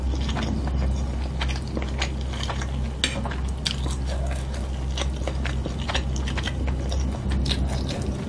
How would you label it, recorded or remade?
recorded